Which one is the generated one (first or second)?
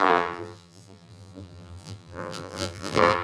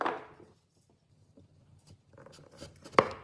first